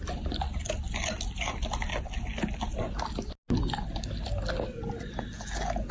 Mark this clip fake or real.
real